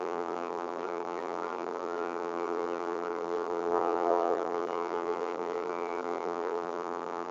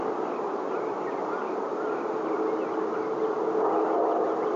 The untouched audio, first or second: second